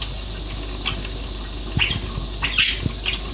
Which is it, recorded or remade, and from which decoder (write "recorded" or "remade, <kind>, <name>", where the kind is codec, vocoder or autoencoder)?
recorded